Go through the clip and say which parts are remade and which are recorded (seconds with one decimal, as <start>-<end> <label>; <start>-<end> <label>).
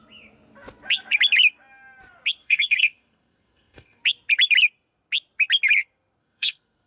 0.0-2.4 recorded; 2.4-4.0 remade; 4.0-6.2 recorded; 6.2-6.9 remade